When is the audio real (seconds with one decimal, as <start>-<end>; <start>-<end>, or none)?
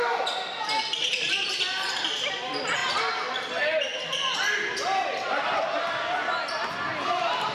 0.0-7.5